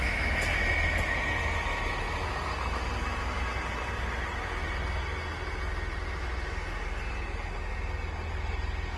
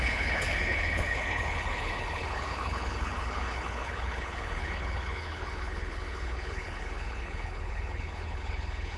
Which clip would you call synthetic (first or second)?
second